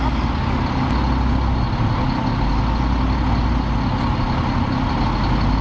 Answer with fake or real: real